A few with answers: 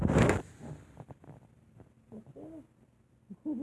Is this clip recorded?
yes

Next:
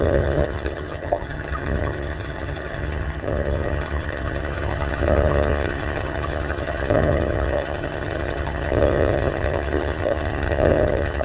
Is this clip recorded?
no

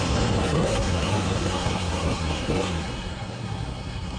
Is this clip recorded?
no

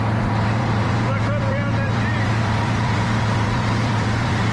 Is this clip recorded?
no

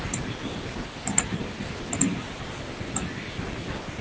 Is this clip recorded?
yes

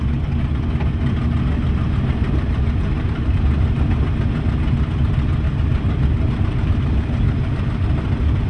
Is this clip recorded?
yes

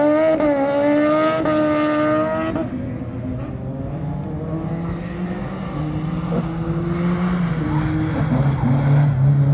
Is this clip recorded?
yes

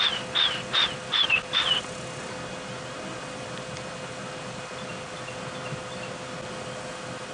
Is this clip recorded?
yes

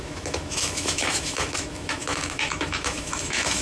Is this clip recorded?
no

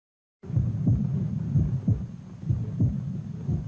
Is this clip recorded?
yes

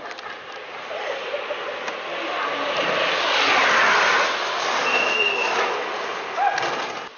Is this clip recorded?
yes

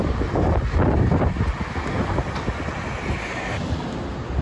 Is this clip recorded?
yes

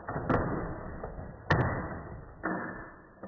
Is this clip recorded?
yes